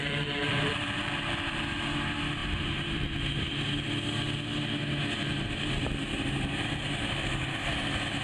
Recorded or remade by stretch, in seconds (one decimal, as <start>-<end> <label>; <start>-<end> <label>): 0.0-1.6 remade; 1.6-2.4 recorded; 2.4-3.3 remade; 3.3-5.3 recorded; 5.3-7.7 remade; 7.7-8.2 recorded